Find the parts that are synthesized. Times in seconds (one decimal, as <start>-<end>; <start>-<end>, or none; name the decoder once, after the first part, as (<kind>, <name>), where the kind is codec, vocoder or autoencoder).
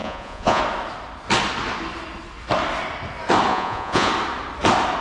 0.0-0.6 (vocoder, Vocos); 3.5-4.1